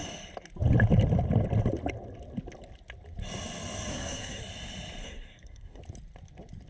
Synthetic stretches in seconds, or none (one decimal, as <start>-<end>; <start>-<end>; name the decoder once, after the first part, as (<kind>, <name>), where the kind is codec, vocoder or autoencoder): 3.9-4.4 (codec, SNAC); 5.0-5.8